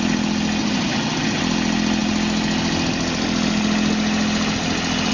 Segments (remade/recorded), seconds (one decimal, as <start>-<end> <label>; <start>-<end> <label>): 0.0-0.6 recorded; 0.6-1.4 remade; 1.4-5.1 recorded